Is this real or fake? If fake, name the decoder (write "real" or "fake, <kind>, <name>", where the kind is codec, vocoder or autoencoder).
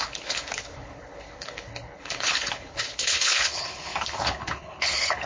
fake, codec, HILCodec